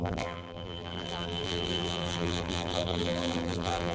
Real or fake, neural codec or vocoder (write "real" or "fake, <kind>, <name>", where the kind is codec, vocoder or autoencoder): fake, vocoder, BigVGAN v2